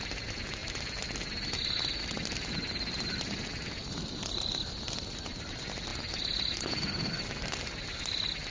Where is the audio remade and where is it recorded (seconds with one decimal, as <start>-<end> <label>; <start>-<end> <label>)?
0.0-3.8 recorded; 3.8-4.7 remade; 4.7-8.5 recorded